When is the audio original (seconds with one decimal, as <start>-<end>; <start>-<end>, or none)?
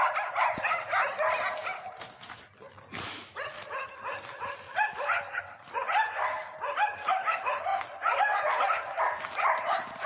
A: 0.0-10.1